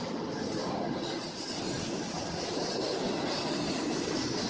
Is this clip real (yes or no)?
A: yes